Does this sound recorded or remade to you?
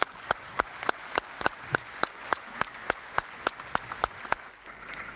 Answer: remade